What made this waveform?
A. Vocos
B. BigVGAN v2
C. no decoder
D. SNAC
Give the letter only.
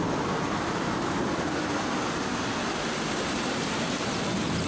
C